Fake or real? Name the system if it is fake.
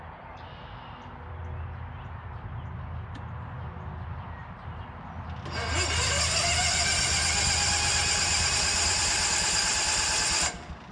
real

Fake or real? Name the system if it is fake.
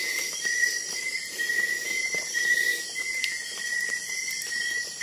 real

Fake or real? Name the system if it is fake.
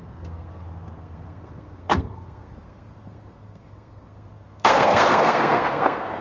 fake, codec, SNAC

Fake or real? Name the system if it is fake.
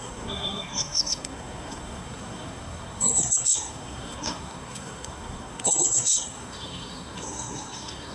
fake, codec, SNAC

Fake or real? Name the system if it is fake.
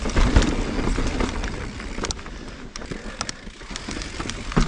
real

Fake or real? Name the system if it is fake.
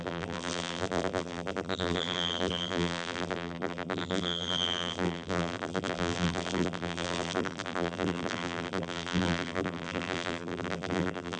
fake, vocoder, BigVGAN v2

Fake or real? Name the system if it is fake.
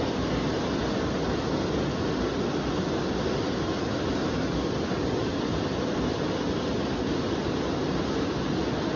real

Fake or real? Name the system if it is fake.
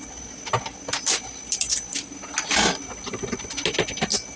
real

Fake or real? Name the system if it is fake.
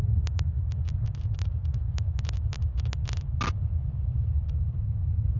real